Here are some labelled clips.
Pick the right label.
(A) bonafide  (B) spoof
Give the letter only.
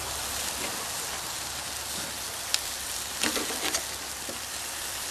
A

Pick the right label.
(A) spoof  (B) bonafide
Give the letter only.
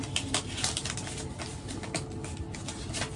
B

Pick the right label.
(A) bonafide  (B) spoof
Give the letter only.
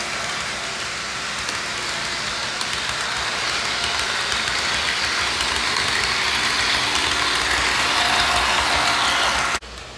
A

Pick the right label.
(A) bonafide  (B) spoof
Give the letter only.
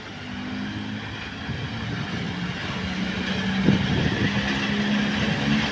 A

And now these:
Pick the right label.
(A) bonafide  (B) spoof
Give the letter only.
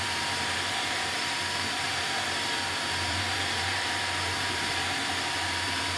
B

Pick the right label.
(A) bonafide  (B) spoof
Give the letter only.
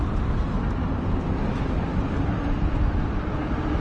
A